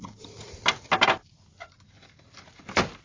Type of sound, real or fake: real